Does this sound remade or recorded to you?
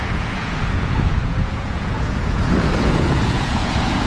remade